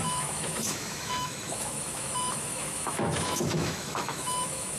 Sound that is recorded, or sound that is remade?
remade